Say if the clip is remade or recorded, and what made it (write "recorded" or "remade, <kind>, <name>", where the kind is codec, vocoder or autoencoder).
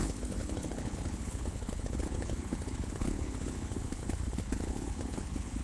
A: remade, codec, HILCodec